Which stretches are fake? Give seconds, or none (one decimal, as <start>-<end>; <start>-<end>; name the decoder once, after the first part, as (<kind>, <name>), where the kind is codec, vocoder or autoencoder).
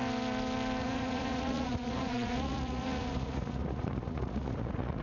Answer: 0.8-5.0 (vocoder, Vocos)